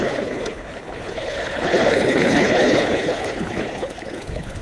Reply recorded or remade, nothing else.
remade